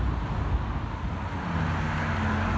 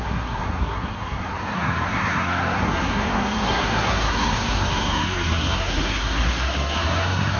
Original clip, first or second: first